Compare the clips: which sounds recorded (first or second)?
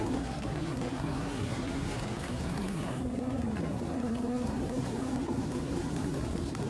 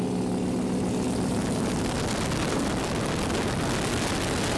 second